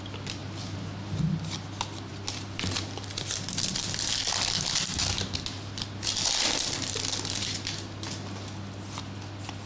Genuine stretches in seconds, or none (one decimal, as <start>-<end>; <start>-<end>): 0.0-0.4; 1.2-2.1; 3.7-9.7